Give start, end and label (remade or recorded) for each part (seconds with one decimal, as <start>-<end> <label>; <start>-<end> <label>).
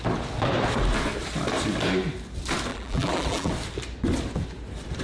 0.0-2.7 recorded; 2.7-3.5 remade; 3.5-5.0 recorded